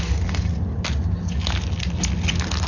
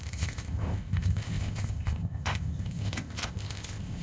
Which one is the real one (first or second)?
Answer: first